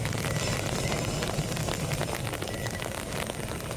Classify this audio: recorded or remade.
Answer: recorded